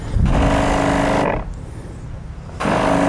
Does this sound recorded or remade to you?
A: recorded